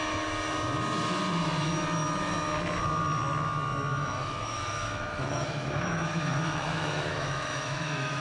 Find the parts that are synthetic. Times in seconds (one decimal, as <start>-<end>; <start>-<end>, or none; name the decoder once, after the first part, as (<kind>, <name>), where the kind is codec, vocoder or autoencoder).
3.9-8.2 (autoencoder, DAC-VAE)